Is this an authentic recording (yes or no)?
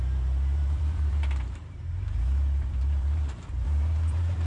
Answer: no